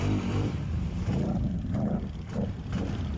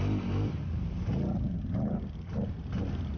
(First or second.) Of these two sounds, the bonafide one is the second